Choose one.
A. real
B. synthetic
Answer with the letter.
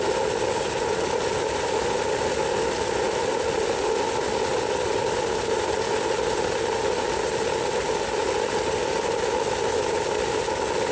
A